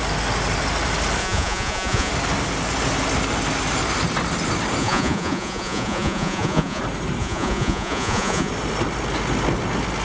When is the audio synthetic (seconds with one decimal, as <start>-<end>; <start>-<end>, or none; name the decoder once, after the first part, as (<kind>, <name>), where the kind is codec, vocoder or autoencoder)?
1.2-2.1 (vocoder, Vocos); 4.8-6.8; 7.2-8.5